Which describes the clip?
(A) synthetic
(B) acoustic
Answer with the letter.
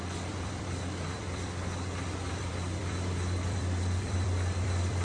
A